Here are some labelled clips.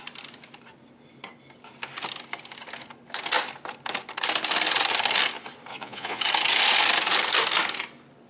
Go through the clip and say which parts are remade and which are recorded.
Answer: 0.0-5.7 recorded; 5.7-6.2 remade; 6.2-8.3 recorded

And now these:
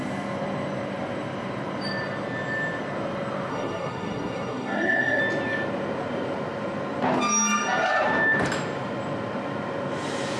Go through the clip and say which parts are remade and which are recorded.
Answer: 0.0-3.5 recorded; 3.5-5.2 remade; 5.2-10.4 recorded

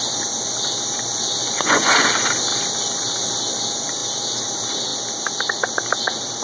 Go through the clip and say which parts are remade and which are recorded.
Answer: 0.0-1.4 recorded; 1.4-2.1 remade; 2.1-6.4 recorded

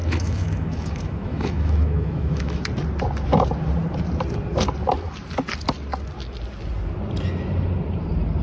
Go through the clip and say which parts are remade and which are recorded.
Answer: 0.0-2.6 remade; 2.6-8.4 recorded